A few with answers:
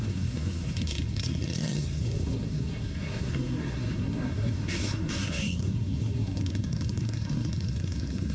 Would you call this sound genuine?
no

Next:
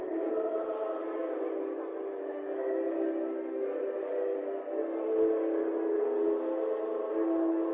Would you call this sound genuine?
yes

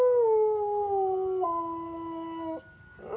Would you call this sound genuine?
yes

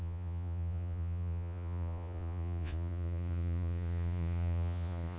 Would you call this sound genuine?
no